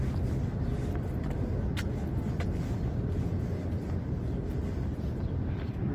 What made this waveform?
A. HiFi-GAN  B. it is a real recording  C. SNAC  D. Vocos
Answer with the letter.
B